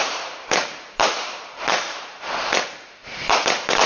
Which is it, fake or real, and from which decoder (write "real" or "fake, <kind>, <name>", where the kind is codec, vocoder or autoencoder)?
fake, vocoder, BigVGAN v2